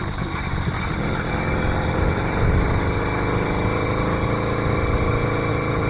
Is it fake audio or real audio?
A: real